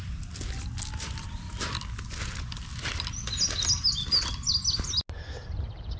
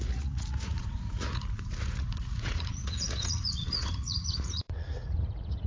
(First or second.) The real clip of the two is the first